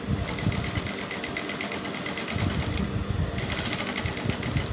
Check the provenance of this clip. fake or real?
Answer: real